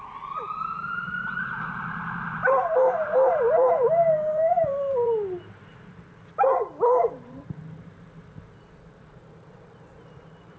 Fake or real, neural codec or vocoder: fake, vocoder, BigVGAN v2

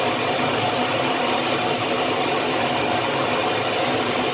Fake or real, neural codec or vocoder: fake, vocoder, BigVGAN v2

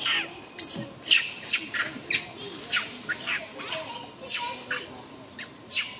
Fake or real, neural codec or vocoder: real